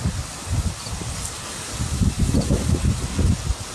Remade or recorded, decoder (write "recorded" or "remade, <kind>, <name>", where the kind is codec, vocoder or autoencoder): recorded